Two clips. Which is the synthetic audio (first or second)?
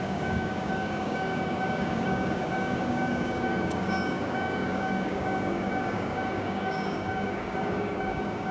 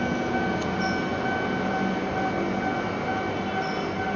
first